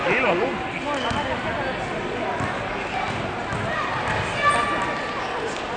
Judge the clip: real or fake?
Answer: real